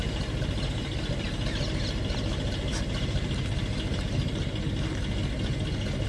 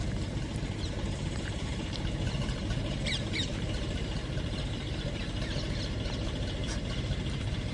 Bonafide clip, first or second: first